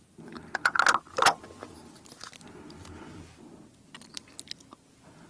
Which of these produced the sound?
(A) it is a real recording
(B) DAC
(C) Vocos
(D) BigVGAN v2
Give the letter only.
A